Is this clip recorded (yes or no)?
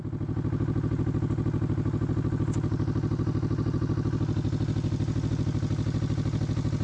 yes